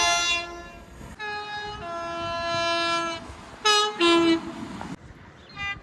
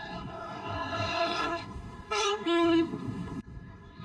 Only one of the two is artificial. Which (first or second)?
second